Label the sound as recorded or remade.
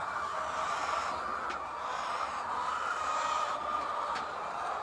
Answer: recorded